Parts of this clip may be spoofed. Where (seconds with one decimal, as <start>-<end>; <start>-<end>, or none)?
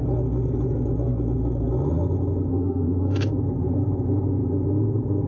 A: 2.5-3.3